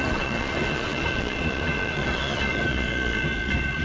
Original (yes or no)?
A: no